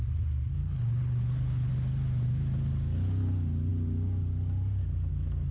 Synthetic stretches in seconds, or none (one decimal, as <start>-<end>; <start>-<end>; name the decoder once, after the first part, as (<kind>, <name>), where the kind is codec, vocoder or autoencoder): 0.6-1.7 (codec, HILCodec)